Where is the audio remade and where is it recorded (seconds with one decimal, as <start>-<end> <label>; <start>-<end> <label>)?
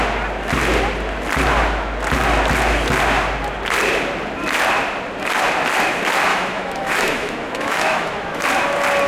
0.0-6.3 recorded; 6.3-8.4 remade; 8.4-9.1 recorded